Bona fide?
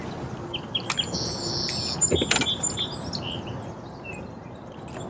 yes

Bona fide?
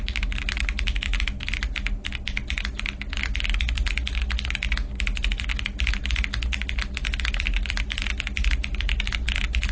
yes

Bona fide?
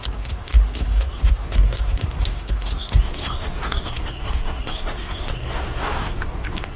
no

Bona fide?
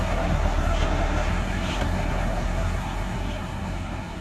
no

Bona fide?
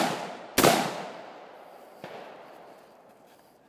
yes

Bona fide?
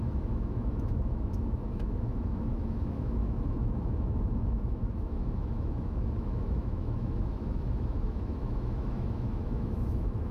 no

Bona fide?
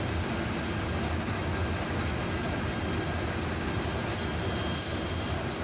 yes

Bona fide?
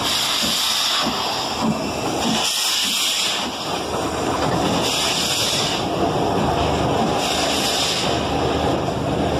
yes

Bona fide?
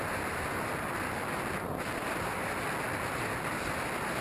yes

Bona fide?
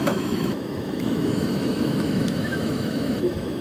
no